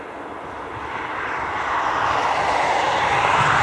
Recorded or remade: recorded